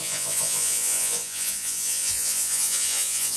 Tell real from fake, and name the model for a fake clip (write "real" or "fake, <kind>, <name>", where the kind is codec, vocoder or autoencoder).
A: fake, vocoder, Vocos